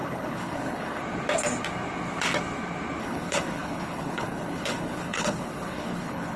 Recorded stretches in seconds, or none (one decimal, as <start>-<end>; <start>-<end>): 1.0-3.0